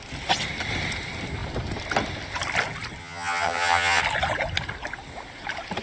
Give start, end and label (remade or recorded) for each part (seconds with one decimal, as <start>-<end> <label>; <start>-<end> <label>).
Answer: 0.0-3.0 recorded; 3.0-4.0 remade; 4.0-5.8 recorded